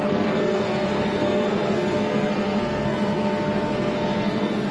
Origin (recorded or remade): remade